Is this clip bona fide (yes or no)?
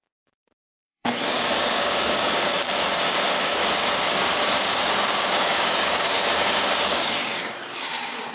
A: no